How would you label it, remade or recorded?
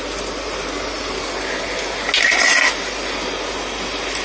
recorded